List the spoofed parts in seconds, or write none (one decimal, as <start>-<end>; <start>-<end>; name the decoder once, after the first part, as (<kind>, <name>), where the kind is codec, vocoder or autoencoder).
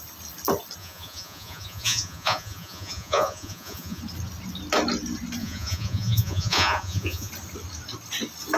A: 0.8-4.0 (vocoder, Vocos); 5.4-7.3